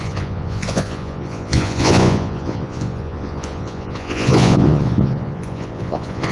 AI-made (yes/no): yes